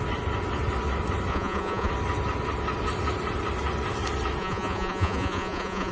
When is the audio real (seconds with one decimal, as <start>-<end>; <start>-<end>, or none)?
0.0-1.3; 1.9-4.4